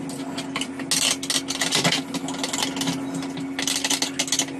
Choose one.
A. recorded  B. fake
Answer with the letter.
A